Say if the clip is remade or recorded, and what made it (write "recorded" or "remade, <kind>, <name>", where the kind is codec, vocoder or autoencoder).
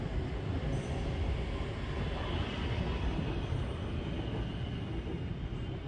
recorded